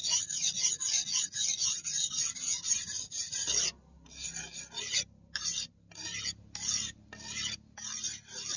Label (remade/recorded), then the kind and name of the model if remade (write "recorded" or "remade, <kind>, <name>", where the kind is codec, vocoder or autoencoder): recorded